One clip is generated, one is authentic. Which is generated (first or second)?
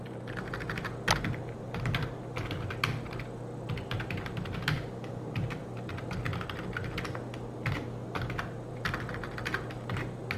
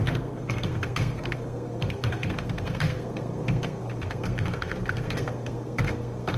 second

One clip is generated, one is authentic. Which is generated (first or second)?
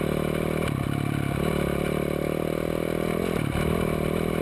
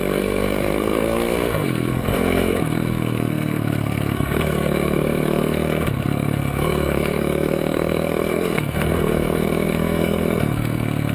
second